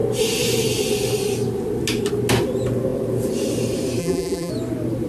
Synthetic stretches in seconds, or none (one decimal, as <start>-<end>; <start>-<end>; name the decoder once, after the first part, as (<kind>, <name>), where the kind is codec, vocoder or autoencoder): 4.0-4.5 (vocoder, BigVGAN v2)